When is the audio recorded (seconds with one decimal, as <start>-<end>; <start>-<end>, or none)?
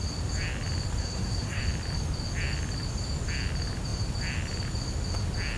0.0-1.0; 1.6-5.6